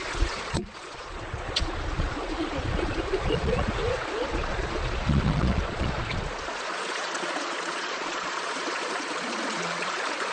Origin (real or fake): fake